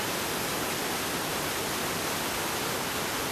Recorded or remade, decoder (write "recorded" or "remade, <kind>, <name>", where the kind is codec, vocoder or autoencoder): recorded